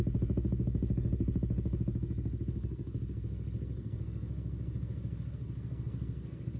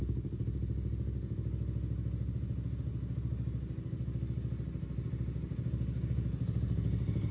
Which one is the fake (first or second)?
first